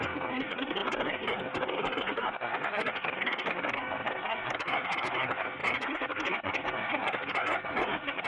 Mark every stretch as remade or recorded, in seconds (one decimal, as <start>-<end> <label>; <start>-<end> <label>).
0.0-8.3 remade